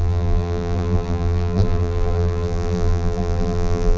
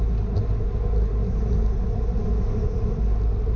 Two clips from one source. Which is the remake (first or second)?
first